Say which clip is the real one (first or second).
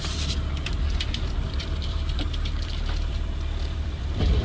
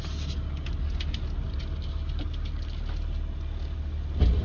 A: second